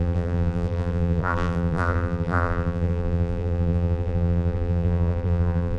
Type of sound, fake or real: fake